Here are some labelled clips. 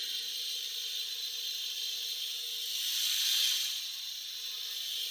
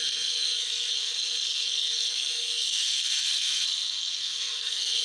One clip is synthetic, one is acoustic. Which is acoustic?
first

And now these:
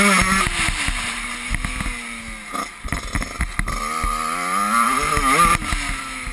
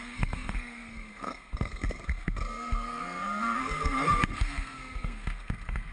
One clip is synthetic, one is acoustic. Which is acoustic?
first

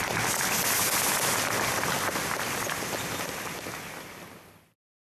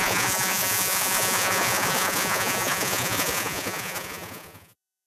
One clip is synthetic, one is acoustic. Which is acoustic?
first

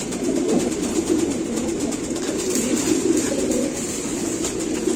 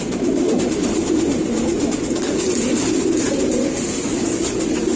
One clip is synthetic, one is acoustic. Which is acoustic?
second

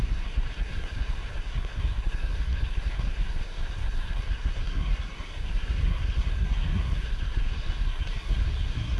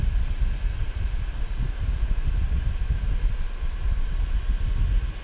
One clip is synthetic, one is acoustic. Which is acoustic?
second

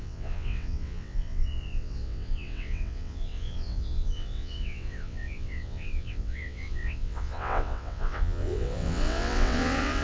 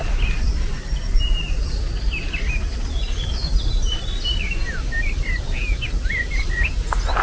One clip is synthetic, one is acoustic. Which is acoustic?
second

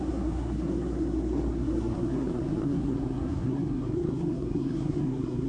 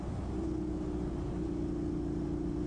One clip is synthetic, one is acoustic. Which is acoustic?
second